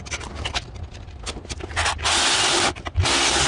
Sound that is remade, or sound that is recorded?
recorded